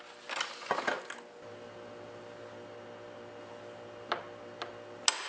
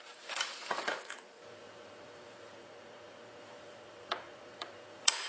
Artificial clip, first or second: second